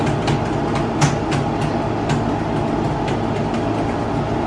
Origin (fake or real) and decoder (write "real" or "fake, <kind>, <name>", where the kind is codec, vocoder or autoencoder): real